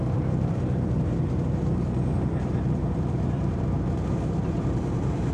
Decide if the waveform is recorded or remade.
remade